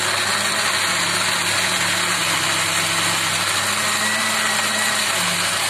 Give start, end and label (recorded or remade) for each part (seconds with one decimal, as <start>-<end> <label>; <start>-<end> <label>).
0.0-5.7 recorded